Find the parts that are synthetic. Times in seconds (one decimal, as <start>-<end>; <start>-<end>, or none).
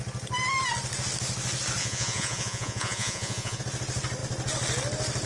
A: 1.8-3.6